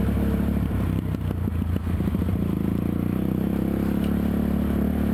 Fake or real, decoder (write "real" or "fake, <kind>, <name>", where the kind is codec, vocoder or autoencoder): fake, vocoder, BigVGAN v2